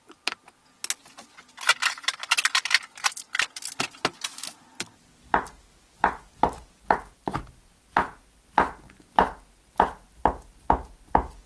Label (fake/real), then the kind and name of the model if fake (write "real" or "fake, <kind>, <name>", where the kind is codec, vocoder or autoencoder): real